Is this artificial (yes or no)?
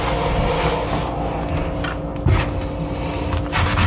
no